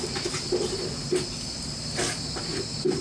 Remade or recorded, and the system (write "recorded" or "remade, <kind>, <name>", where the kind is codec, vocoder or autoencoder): recorded